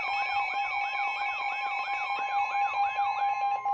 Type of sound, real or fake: real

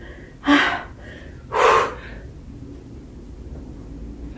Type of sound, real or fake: real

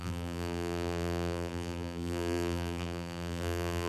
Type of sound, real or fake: fake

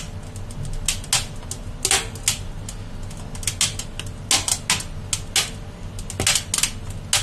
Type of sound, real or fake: real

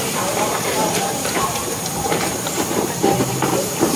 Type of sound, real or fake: fake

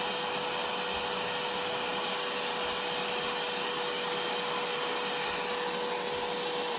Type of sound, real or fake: real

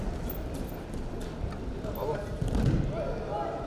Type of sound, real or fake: real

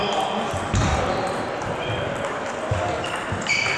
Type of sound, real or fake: fake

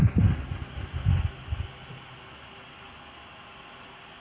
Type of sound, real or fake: real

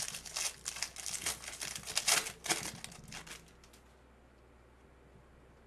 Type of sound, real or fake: real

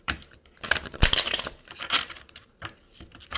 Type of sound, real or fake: fake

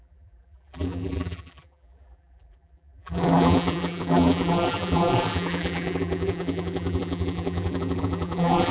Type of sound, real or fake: fake